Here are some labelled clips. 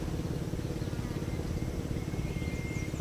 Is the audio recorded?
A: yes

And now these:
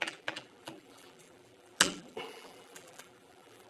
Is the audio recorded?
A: no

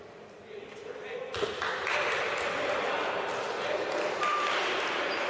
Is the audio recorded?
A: no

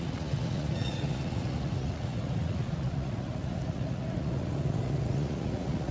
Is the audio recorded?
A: no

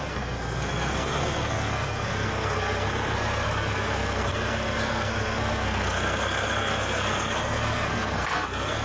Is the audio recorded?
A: no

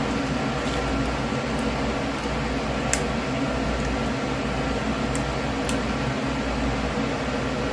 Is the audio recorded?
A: yes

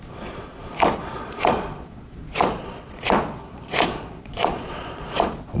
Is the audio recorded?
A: no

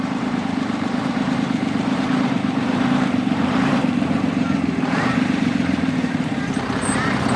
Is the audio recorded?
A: no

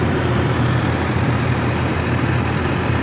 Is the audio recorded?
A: no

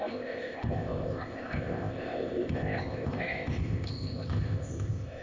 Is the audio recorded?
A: no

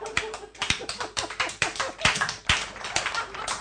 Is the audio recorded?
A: no